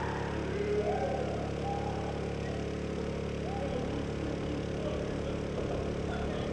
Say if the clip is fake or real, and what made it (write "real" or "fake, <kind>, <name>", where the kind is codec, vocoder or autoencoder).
real